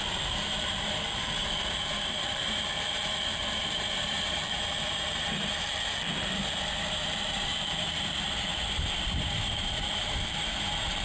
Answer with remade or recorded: remade